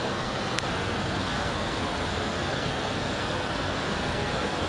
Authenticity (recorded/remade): remade